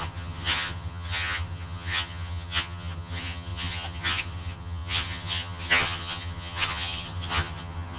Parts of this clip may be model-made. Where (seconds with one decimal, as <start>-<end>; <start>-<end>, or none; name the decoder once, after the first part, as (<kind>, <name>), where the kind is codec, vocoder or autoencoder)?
0.0-8.0 (vocoder, HiFi-GAN)